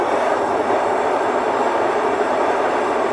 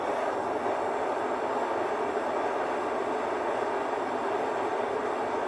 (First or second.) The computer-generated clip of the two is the first